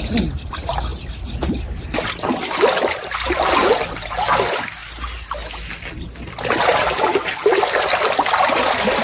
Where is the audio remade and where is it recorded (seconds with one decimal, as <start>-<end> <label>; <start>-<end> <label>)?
0.0-9.0 recorded